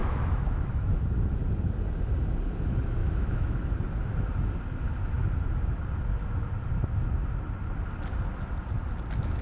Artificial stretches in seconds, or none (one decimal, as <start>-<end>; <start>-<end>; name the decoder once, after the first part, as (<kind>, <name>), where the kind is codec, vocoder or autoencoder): 0.0-0.9 (autoencoder, DAC-VAE); 3.0-3.5